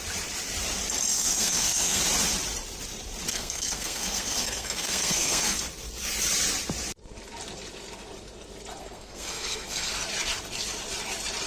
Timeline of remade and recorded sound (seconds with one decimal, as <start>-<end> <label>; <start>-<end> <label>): 0.0-1.1 recorded; 1.1-2.0 remade; 2.0-3.3 recorded; 3.3-5.6 remade; 5.6-8.8 recorded; 8.8-9.9 remade; 9.9-11.5 recorded

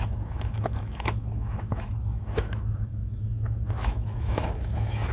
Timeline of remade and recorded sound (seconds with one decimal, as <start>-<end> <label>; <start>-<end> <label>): 0.0-5.1 remade